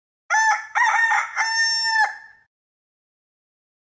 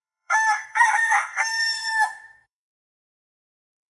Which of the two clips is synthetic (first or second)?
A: second